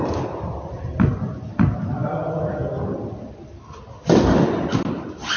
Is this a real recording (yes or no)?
yes